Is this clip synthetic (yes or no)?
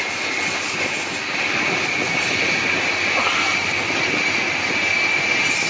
no